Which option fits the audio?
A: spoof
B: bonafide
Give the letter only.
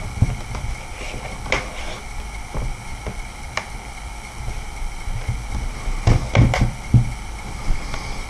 A